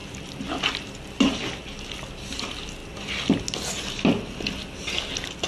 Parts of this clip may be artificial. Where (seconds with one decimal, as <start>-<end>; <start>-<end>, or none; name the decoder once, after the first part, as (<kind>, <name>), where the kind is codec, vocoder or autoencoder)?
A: none